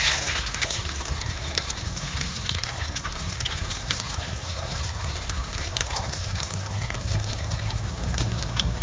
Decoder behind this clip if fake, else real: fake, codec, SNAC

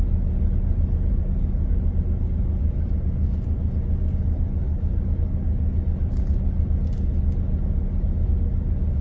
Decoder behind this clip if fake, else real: real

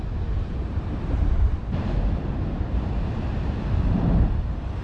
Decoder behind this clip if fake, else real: fake, vocoder, BigVGAN v2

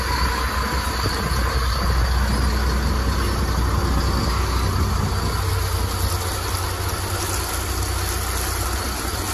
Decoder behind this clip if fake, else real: real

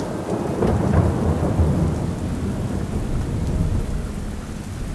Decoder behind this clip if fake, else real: real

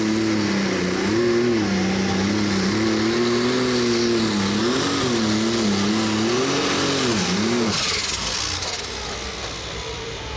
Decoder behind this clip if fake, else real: real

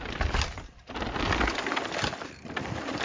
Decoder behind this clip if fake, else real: real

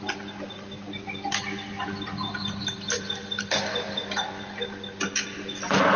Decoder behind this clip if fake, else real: real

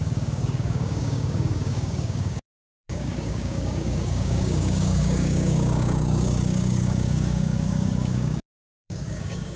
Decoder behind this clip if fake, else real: fake, codec, DAC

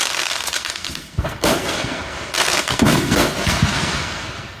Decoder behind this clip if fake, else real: fake, codec, SNAC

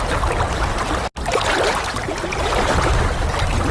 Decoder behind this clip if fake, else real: real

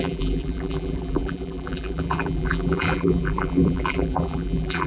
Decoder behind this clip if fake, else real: fake, vocoder, BigVGAN v2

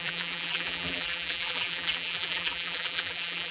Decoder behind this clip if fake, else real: fake, vocoder, BigVGAN v2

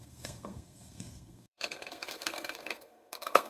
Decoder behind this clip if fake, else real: fake, codec, SNAC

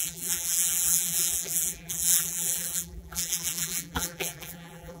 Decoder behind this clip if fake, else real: fake, vocoder, BigVGAN v2